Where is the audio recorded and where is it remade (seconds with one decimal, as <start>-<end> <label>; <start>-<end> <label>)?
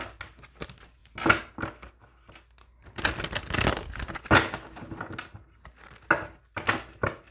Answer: 0.0-7.3 recorded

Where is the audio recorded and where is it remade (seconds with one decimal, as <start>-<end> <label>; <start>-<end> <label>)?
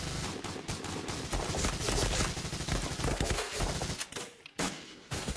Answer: 0.0-3.1 recorded; 3.1-3.6 remade; 3.6-4.5 recorded; 4.5-5.4 remade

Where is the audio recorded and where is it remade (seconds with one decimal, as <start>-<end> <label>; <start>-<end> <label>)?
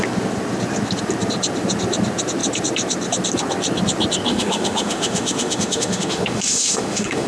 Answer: 0.0-4.3 recorded; 4.3-7.3 remade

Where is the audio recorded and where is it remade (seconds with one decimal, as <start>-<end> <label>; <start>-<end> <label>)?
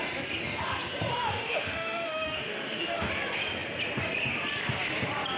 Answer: 0.0-1.1 recorded; 1.1-3.1 remade; 3.1-5.4 recorded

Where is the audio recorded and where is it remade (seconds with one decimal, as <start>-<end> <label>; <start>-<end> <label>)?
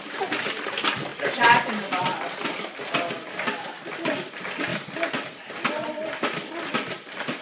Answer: 0.0-1.1 recorded; 1.1-1.7 remade; 1.7-7.4 recorded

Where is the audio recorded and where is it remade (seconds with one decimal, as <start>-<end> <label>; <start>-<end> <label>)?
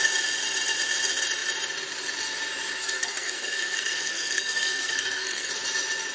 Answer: 0.0-2.8 recorded; 2.8-5.5 remade; 5.5-6.1 recorded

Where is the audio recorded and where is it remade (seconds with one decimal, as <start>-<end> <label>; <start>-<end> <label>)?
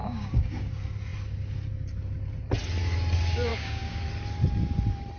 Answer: 0.0-0.7 remade; 0.7-3.5 recorded; 3.5-4.0 remade; 4.0-5.2 recorded